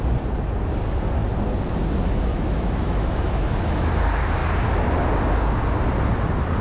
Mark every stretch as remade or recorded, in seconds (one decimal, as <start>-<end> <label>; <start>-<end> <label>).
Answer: 0.0-2.3 recorded; 2.3-3.9 remade; 3.9-6.6 recorded